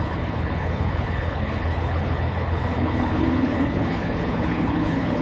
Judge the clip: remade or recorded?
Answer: remade